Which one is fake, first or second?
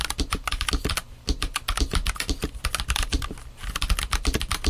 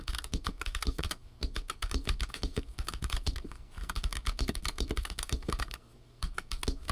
second